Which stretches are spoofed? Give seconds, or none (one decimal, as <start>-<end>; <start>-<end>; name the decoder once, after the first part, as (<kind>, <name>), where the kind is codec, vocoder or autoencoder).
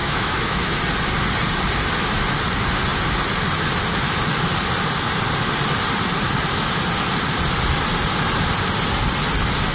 0.0-0.8 (autoencoder, DAC-VAE)